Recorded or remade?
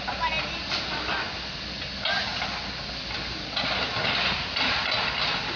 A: recorded